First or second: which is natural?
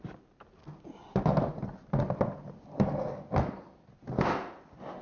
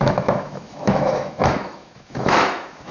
first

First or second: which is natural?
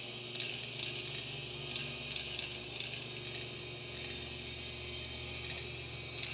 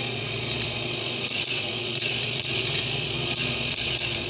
first